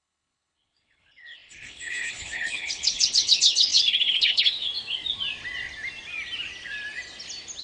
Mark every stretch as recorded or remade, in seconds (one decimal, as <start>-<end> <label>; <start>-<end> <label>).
0.0-4.7 remade; 4.7-7.6 recorded